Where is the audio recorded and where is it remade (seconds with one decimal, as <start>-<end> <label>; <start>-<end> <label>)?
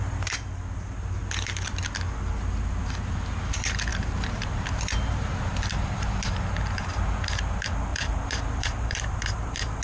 0.0-3.9 recorded; 3.9-6.3 remade; 6.3-7.9 recorded; 7.9-9.8 remade